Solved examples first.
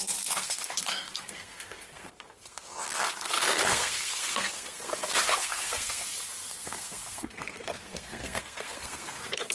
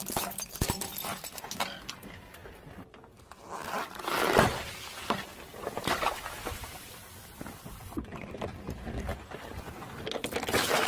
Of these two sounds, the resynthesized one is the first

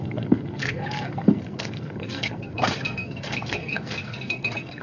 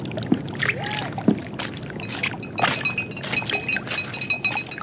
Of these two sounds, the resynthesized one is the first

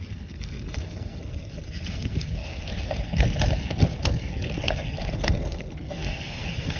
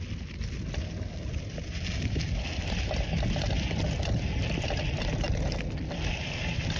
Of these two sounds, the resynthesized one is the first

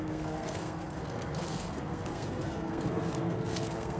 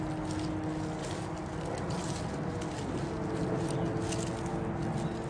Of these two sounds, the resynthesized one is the first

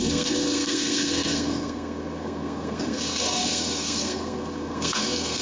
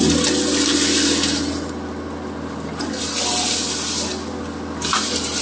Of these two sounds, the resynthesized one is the first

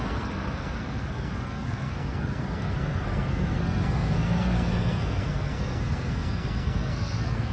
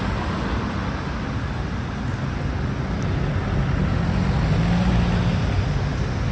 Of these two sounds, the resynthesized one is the first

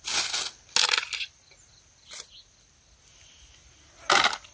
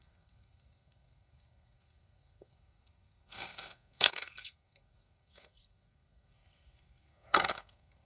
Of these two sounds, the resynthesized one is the second